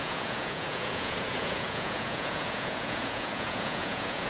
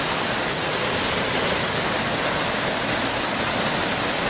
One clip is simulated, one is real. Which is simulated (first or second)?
first